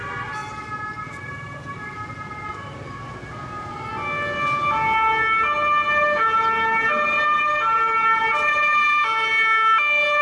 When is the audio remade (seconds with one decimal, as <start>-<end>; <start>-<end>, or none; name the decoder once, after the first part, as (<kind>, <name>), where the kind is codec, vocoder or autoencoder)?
0.0-3.9 (vocoder, BigVGAN v2); 8.3-9.3